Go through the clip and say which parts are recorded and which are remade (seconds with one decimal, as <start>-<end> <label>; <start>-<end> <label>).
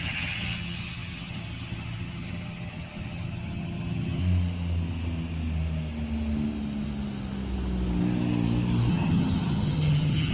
0.0-4.2 remade; 4.2-8.9 recorded; 8.9-10.3 remade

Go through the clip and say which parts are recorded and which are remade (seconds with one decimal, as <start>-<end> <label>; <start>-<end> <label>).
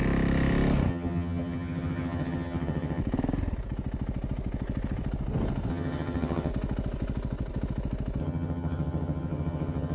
0.0-0.9 recorded; 0.9-3.0 remade; 3.0-5.7 recorded; 5.7-6.5 remade; 6.5-8.2 recorded; 8.2-9.9 remade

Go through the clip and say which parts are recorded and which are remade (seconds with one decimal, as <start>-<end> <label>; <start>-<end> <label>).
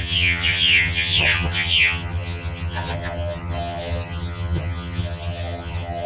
0.0-6.1 remade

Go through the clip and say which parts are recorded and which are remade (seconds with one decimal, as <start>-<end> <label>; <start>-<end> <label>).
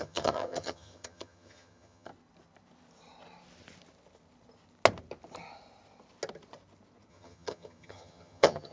0.0-2.1 remade; 2.1-7.1 recorded; 7.1-8.7 remade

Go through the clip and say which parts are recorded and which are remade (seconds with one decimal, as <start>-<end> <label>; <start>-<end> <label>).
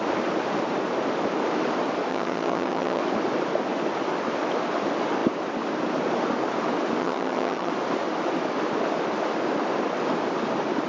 0.0-2.1 recorded; 2.1-3.0 remade; 3.0-7.0 recorded; 7.0-7.7 remade; 7.7-10.9 recorded